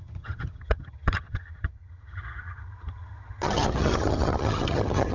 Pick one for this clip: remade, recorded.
remade